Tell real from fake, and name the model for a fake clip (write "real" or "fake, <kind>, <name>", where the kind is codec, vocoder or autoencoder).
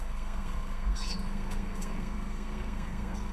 fake, codec, SNAC